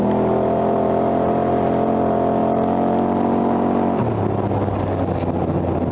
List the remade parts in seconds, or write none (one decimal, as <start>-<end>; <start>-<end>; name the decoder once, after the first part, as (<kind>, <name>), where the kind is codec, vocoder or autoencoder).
none